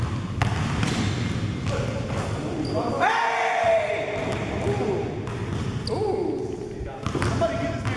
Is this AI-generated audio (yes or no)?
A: no